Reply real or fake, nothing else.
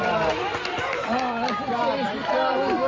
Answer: real